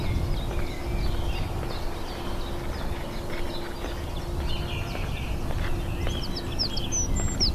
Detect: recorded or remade recorded